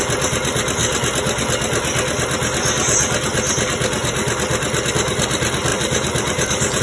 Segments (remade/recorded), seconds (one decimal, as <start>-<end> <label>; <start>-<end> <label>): 0.0-5.7 recorded; 5.7-6.8 remade